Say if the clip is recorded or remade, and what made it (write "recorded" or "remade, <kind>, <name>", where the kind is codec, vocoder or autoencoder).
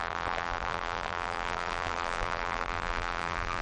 remade, vocoder, BigVGAN v2